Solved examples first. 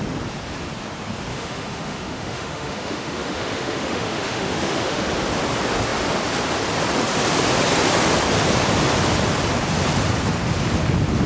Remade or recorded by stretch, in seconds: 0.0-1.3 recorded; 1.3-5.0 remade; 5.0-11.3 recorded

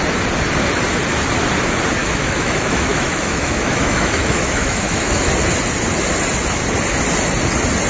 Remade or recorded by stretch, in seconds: 0.0-2.0 recorded; 2.0-5.3 remade; 5.3-7.9 recorded

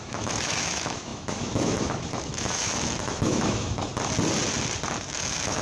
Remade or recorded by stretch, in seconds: 0.0-3.9 remade; 3.9-5.1 recorded; 5.1-5.6 remade

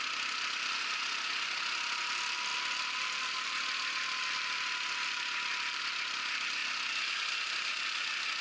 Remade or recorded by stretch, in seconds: 0.0-8.4 recorded

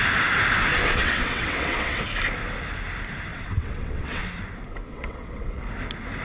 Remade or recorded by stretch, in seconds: 0.0-0.7 recorded; 0.7-2.0 remade; 2.0-3.3 recorded; 3.3-4.2 remade; 4.2-4.9 recorded; 4.9-5.6 remade; 5.6-6.2 recorded